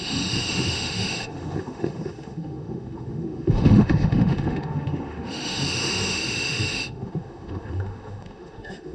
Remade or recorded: remade